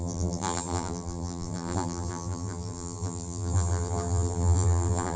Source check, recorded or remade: remade